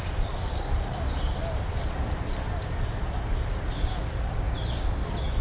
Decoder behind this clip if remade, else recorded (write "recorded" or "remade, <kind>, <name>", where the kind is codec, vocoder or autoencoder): recorded